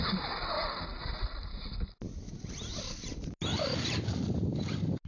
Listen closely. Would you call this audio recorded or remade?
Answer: recorded